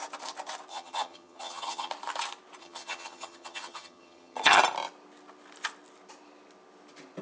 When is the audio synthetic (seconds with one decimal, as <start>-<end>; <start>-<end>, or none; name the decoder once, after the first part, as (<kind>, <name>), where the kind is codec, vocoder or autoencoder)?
0.7-1.9 (vocoder, HiFi-GAN); 2.6-4.6